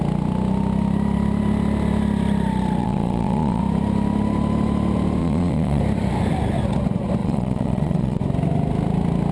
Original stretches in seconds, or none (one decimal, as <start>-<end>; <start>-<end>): 0.0-2.8; 3.6-5.2; 5.8-7.2; 8.2-9.3